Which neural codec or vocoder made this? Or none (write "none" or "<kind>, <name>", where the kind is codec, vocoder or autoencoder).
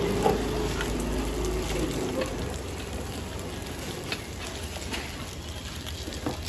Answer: none